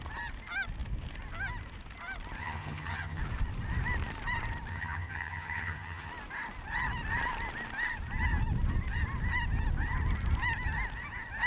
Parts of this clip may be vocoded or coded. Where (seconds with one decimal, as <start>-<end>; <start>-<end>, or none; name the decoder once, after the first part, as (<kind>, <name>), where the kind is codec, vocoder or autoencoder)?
2.4-3.2 (vocoder, HiFi-GAN); 4.7-6.1